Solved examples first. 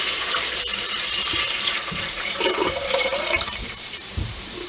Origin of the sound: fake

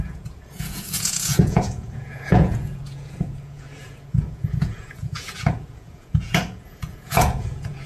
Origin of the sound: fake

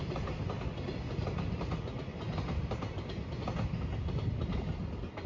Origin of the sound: real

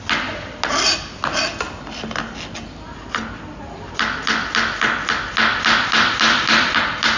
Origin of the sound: real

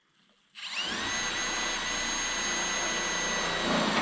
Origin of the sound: real